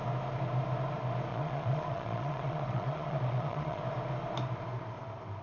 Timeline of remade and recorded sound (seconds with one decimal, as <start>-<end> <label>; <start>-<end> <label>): 0.0-1.3 recorded; 1.3-3.8 remade; 3.8-5.4 recorded